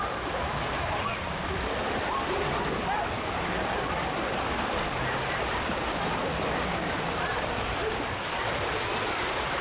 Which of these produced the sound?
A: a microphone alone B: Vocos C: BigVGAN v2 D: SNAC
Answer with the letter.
C